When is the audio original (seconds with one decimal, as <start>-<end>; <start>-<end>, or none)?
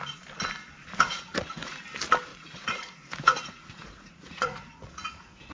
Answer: 0.0-0.8; 1.8-2.3